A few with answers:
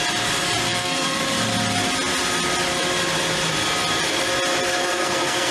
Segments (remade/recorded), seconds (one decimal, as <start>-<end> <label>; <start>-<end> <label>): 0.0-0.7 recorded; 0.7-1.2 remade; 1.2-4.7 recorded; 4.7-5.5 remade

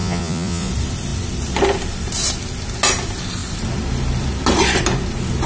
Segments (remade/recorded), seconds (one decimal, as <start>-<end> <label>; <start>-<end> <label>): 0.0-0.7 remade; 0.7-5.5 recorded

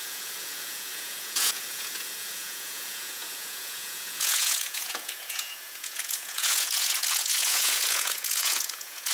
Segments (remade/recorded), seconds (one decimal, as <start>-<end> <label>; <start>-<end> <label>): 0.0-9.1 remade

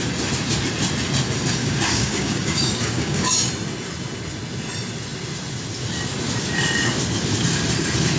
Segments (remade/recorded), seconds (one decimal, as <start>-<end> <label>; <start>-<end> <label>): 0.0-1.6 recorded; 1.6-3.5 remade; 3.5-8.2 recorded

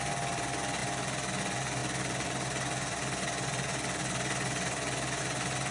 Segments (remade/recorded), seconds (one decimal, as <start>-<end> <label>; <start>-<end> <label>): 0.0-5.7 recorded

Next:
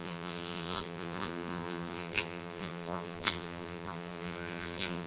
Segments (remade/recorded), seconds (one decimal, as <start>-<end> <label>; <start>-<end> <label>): 0.0-5.1 remade